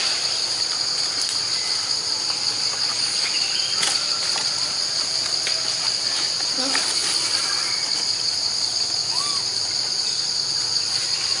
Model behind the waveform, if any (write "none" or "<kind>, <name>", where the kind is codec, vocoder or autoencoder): none